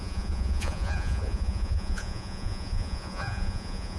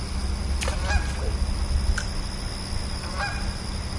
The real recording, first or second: second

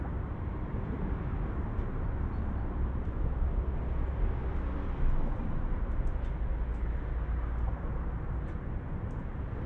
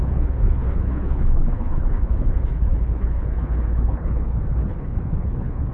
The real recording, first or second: first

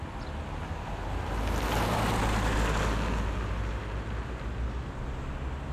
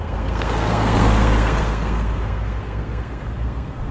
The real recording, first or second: first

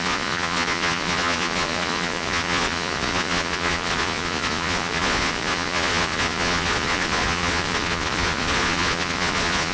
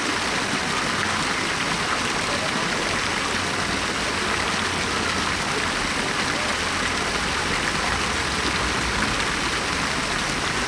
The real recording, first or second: second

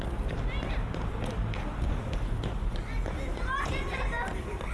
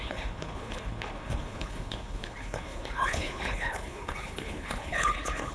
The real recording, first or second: first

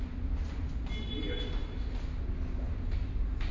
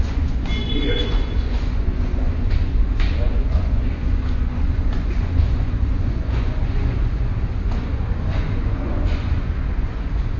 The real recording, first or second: first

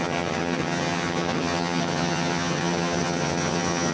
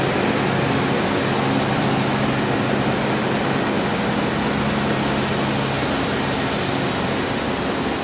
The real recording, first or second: second